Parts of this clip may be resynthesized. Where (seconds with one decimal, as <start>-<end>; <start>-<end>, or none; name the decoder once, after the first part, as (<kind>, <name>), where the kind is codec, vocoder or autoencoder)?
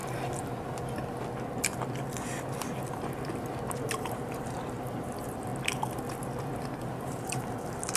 3.8-5.5 (vocoder, BigVGAN v2); 6.9-8.0